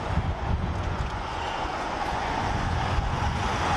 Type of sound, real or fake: fake